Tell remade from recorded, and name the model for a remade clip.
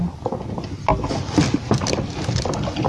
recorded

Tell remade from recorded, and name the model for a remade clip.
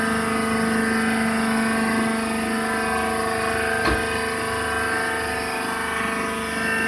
recorded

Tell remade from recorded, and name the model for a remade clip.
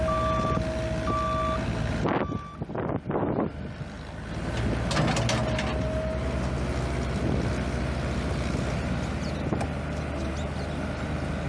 recorded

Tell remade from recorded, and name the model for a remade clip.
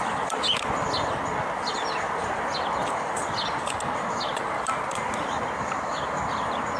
recorded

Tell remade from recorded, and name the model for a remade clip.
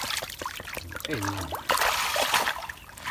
recorded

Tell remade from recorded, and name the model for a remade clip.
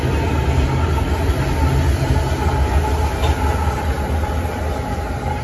recorded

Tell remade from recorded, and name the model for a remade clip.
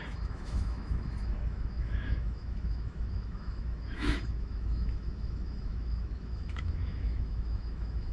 remade, autoencoder, DAC-VAE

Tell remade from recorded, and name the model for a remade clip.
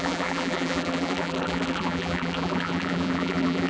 remade, vocoder, BigVGAN v2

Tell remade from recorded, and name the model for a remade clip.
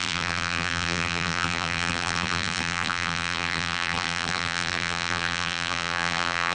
remade, vocoder, BigVGAN v2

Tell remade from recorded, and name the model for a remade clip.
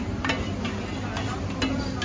recorded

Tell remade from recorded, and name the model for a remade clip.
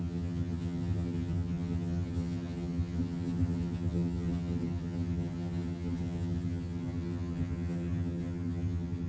remade, vocoder, HiFi-GAN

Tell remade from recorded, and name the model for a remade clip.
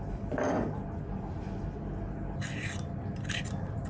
recorded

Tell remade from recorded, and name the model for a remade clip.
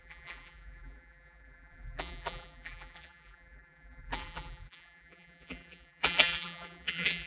remade, vocoder, BigVGAN v2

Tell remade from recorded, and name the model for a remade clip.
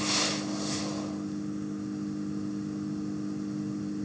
recorded